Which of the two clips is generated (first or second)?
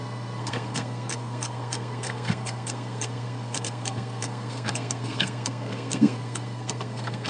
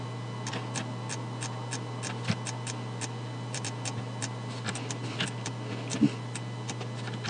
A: first